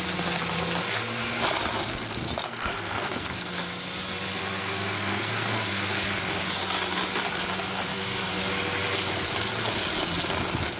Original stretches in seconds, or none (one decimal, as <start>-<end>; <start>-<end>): 0.0-1.9; 3.5-4.4; 6.0-7.9; 8.4-10.8